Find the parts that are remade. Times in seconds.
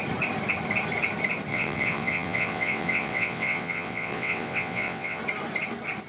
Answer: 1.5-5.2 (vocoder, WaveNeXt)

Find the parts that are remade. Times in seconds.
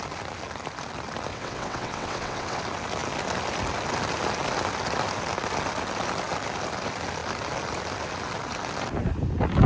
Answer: 1.3-2.6 (vocoder, WaveNeXt)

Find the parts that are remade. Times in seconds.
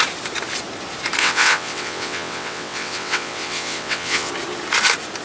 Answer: 1.2-4.3 (vocoder, WaveNeXt)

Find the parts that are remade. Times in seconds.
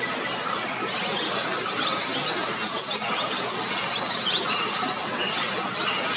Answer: 5.0-5.5 (vocoder, WaveNeXt)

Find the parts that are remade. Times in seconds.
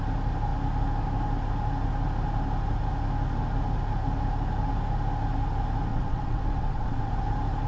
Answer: 5.9-7.1 (vocoder, WaveNeXt)